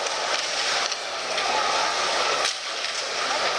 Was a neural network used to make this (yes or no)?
no